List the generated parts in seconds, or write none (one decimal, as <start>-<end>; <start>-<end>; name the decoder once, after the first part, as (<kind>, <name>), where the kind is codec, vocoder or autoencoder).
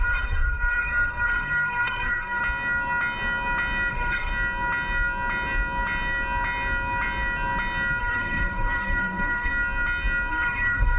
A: 0.0-2.4 (codec, SNAC); 3.9-4.3; 8.0-9.5; 10.3-11.0